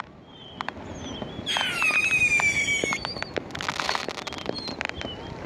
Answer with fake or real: real